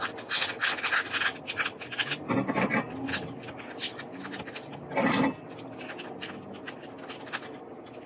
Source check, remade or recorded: recorded